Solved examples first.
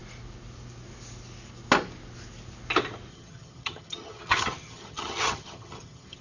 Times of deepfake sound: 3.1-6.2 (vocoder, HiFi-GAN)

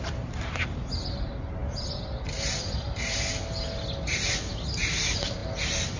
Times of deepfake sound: none

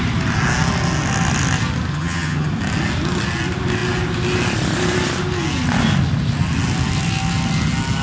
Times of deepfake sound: 1.9-2.5 (vocoder, HiFi-GAN)

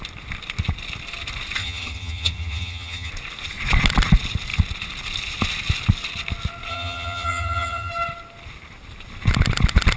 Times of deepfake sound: 1.6-3.1 (vocoder, HiFi-GAN); 6.7-7.9

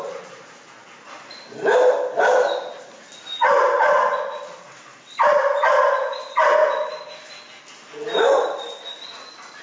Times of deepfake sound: none